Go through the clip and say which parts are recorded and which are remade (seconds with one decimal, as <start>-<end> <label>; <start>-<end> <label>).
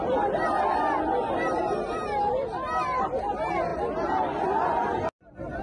0.0-5.6 recorded